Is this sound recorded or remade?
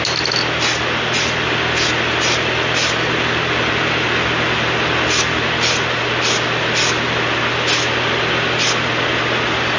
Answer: recorded